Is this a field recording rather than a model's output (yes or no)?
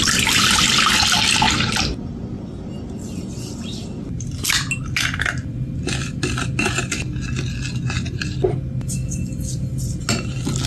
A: yes